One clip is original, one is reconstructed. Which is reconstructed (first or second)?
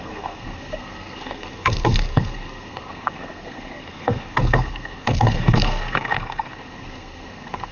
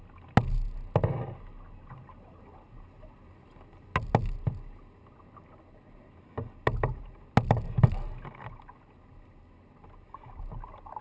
first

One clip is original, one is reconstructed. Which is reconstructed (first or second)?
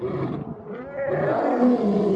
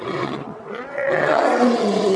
second